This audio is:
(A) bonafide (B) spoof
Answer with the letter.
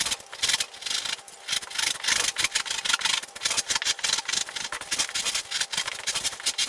A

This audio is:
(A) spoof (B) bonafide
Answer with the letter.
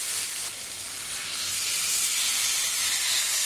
B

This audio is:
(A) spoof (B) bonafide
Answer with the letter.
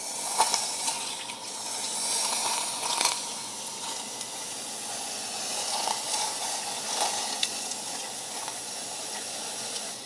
A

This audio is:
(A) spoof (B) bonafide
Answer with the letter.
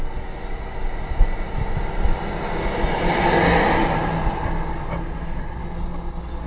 B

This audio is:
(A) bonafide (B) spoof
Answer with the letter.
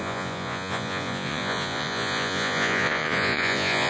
B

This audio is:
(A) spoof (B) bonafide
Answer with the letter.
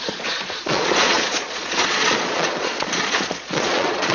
A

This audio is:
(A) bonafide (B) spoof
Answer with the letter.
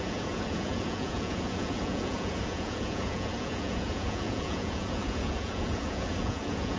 B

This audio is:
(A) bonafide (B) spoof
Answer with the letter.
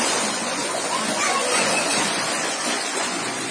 B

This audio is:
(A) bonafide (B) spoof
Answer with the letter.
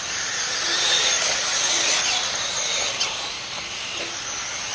A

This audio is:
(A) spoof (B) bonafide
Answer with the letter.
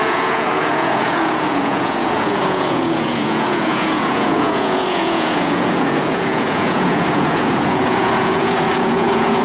A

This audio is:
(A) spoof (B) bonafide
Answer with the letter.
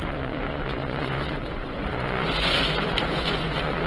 A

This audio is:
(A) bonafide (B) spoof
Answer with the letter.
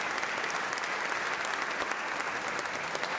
A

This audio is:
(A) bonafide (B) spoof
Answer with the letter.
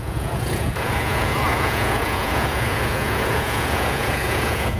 B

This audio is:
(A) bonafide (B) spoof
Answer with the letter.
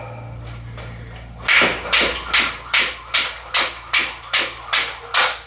A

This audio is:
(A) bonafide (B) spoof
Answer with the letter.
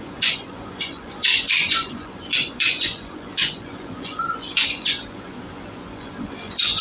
B